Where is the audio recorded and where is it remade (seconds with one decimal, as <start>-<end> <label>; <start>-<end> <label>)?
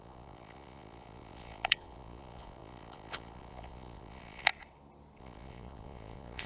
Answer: 0.0-4.5 remade; 4.5-5.2 recorded; 5.2-6.5 remade